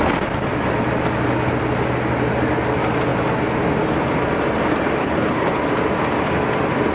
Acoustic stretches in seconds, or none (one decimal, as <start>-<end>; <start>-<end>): 0.0-5.0; 5.6-6.9